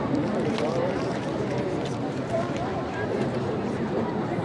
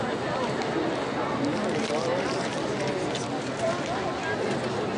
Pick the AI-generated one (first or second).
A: first